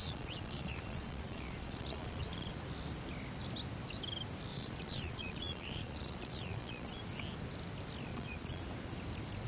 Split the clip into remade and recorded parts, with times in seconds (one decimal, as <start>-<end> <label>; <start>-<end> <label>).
0.0-2.5 remade; 2.5-4.5 recorded; 4.5-7.0 remade; 7.0-8.1 recorded; 8.1-8.6 remade; 8.6-9.5 recorded